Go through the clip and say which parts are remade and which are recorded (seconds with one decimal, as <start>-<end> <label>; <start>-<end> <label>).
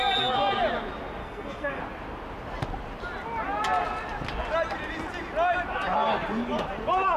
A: 0.0-1.2 recorded; 1.2-1.8 remade; 1.8-7.2 recorded